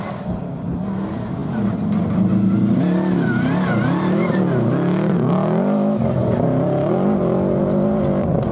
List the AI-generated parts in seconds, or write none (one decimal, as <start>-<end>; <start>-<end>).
none